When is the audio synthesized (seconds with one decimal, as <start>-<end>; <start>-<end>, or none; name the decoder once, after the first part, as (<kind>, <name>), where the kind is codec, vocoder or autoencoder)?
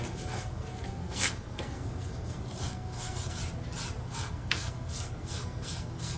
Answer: 0.0-3.4 (codec, SNAC); 4.0-6.2